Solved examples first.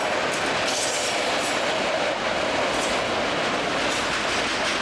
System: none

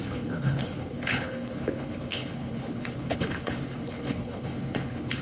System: codec, HILCodec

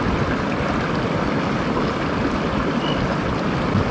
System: none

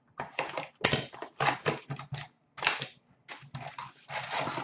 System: none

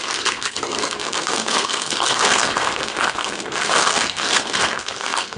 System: codec, SNAC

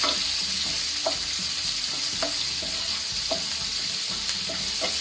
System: none